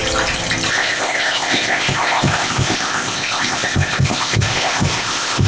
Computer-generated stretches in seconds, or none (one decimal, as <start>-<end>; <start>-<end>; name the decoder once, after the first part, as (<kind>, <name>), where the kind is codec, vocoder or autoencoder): 0.7-5.5 (codec, ZipCodec)